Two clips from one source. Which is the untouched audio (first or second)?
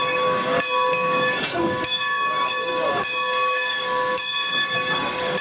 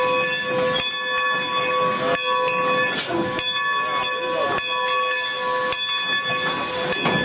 second